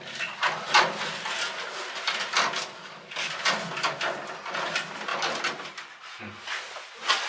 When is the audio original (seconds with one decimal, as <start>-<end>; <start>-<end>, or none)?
0.0-2.8; 3.3-7.3

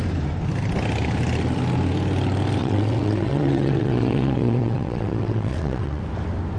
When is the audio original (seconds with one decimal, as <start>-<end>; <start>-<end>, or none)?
0.0-2.6; 6.0-6.6

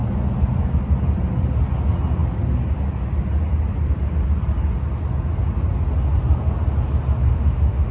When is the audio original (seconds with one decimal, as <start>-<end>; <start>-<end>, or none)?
0.0-7.3

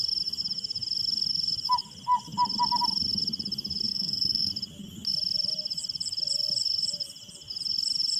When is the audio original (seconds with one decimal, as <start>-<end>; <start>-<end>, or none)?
0.0-3.9; 4.5-8.2

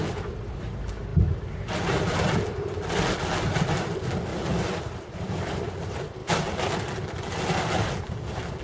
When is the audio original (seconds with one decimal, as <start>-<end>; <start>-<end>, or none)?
0.0-1.1; 1.8-4.3; 5.5-6.2; 6.7-8.6

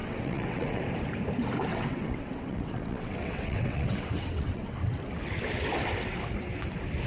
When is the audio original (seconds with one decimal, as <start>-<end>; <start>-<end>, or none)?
0.8-1.7; 4.7-7.1

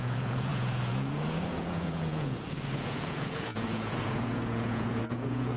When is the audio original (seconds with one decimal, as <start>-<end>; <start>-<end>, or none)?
none